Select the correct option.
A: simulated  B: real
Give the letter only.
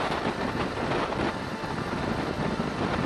B